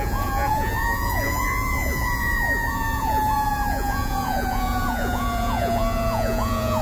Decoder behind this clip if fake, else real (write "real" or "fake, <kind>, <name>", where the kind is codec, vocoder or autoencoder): fake, vocoder, Vocos